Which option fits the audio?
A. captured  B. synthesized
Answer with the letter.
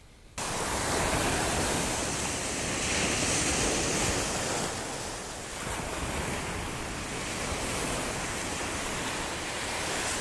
A